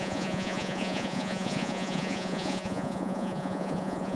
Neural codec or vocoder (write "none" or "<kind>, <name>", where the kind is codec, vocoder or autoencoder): vocoder, Vocos